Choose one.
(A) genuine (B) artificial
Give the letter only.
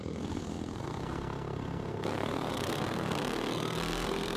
B